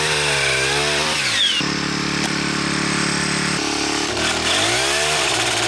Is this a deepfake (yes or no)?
no